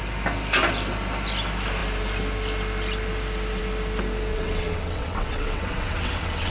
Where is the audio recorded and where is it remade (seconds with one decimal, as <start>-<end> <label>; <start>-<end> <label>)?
0.0-4.3 recorded; 4.3-6.5 remade